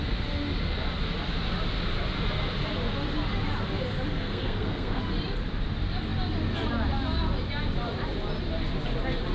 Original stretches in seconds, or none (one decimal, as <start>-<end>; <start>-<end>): 0.0-4.1; 5.0-9.3